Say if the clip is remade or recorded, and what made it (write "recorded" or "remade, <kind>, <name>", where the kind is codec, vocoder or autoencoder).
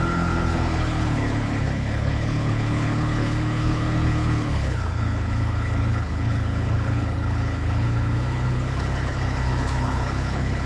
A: remade, codec, HILCodec